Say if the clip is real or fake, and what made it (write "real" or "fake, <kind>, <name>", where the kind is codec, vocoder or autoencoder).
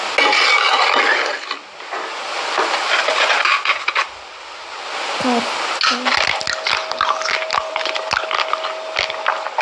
real